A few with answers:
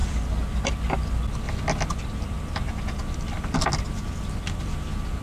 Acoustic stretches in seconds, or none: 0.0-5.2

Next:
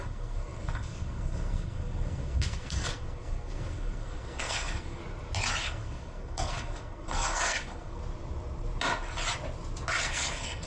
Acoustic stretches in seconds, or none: 5.0-5.6; 8.0-10.0

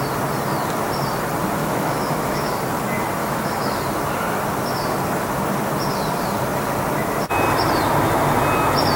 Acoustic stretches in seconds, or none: 0.0-1.6; 2.6-3.2; 3.8-9.0

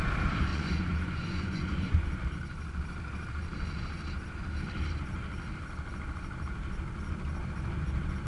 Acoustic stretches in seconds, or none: 0.0-0.5; 2.0-8.3

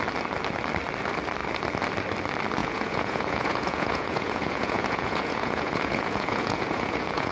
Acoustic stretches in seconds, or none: 0.0-2.6

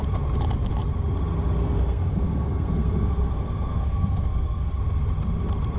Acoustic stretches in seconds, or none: 0.0-1.6; 4.8-5.8

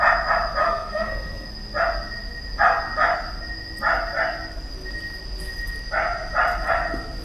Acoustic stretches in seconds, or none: 0.0-0.6; 1.5-7.2